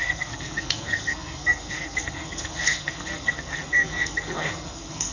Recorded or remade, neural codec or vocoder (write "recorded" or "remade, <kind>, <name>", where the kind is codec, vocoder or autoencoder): remade, codec, SNAC